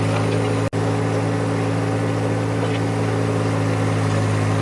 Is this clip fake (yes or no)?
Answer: no